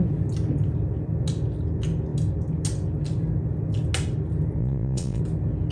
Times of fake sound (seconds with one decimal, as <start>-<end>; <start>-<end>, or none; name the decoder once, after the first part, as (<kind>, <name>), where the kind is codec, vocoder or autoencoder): 4.6-5.2 (vocoder, Vocos)